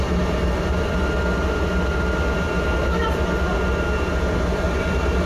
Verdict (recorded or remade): recorded